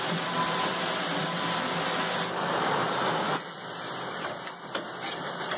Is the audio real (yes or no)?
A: yes